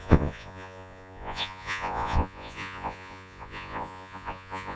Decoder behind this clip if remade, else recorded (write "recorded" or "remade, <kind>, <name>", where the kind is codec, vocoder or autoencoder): remade, vocoder, Vocos